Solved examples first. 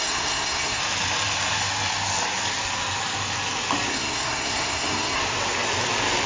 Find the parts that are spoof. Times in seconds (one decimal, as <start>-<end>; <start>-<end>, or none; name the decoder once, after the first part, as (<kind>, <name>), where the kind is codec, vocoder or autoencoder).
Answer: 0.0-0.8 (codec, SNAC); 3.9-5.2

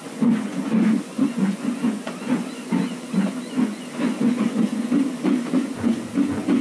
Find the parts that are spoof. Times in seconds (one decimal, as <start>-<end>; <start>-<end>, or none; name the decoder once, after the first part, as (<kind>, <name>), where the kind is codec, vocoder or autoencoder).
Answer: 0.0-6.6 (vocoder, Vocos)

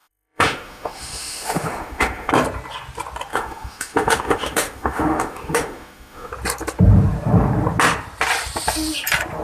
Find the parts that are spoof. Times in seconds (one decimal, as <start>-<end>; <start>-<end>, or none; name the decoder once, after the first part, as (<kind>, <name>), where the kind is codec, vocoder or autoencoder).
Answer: 0.0-2.3 (autoencoder, DAC-VAE); 3.3-6.3

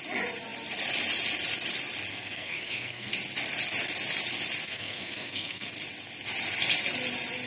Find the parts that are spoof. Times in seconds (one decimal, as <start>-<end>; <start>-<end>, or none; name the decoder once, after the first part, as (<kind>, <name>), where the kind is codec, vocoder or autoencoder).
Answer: 2.1-3.1 (codec, SNAC); 4.7-5.7

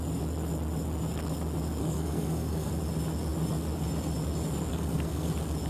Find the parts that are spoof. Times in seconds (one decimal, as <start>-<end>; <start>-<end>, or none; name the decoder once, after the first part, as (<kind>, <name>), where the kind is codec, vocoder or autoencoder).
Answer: 1.8-2.7 (codec, SNAC); 4.7-5.3

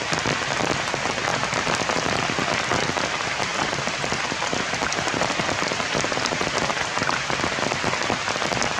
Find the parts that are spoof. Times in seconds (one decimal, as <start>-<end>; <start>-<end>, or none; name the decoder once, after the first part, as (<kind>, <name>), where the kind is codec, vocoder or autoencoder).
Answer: 1.3-2.2 (vocoder, BigVGAN v2); 3.5-7.5

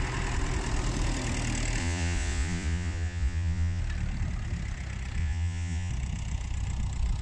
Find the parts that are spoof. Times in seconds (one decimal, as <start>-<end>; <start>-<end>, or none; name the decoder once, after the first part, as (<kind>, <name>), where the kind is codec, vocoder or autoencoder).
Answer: 1.8-3.8 (vocoder, Vocos); 5.2-5.9

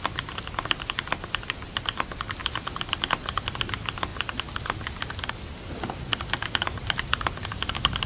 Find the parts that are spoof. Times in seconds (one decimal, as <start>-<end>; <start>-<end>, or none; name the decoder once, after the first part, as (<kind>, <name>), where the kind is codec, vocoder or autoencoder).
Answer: none